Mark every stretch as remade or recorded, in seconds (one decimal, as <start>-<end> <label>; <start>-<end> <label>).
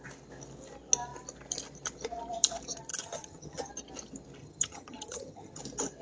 0.0-2.9 recorded; 2.9-3.7 remade; 3.7-4.4 recorded; 4.4-5.6 remade; 5.6-6.0 recorded